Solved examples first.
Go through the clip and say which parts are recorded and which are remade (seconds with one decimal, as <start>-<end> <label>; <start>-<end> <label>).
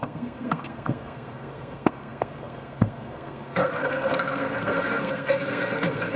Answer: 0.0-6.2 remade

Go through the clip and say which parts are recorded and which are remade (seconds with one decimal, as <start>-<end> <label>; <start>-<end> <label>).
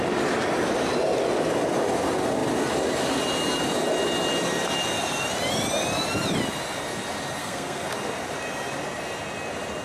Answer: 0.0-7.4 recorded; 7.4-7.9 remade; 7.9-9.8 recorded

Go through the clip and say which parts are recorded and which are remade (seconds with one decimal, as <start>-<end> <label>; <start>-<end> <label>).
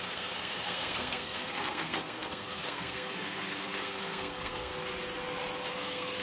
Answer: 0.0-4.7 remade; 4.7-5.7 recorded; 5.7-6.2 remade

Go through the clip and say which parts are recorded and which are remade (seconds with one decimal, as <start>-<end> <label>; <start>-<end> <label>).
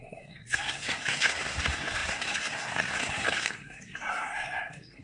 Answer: 0.0-5.0 remade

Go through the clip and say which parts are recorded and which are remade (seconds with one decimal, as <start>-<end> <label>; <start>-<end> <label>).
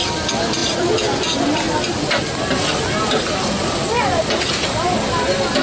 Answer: 0.0-5.6 recorded